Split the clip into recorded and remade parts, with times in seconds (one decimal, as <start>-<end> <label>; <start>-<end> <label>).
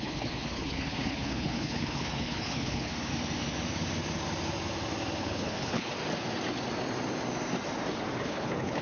0.0-3.1 remade; 3.1-5.2 recorded; 5.2-5.9 remade; 5.9-8.2 recorded; 8.2-8.8 remade